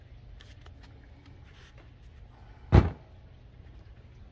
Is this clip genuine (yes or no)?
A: yes